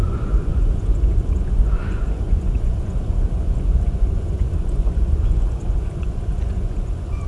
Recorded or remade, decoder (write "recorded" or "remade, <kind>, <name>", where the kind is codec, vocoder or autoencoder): remade, vocoder, Vocos